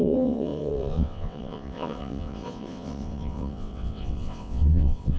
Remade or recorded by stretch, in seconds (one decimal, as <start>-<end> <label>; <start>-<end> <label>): 0.0-5.2 remade